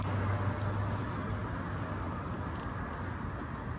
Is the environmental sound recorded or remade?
recorded